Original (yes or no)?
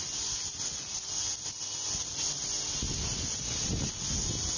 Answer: yes